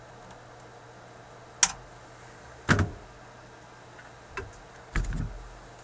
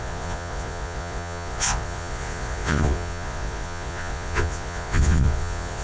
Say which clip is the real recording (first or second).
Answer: first